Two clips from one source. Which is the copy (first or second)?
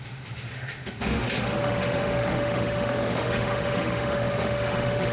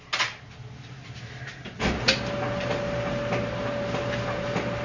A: first